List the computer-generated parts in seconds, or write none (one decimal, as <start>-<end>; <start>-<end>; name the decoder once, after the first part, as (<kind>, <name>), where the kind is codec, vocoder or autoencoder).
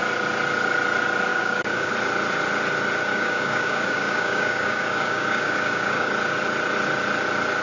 1.3-1.9 (codec, DAC); 3.1-6.1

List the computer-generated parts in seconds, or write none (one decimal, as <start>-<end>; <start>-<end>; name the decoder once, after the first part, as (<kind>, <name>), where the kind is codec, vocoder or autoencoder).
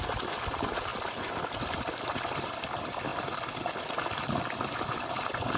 none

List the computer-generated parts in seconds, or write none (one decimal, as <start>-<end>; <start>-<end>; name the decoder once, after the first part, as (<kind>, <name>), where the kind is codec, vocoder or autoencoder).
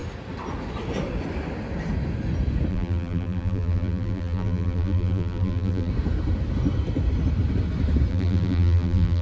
2.7-5.9 (vocoder, BigVGAN v2); 8.1-9.2